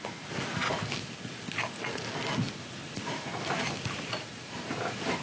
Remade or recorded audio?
recorded